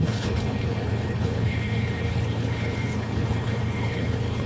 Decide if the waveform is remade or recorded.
remade